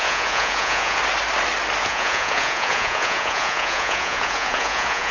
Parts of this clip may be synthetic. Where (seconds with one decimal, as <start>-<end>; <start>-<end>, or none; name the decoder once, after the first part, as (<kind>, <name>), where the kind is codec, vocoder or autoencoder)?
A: 0.0-1.0 (vocoder, Vocos); 1.8-5.1